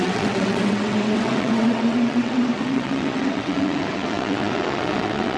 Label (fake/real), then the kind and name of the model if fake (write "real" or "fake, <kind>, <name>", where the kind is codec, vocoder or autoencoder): fake, vocoder, WaveNeXt